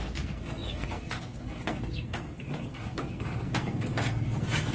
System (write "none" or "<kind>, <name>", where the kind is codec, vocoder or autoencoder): codec, SNAC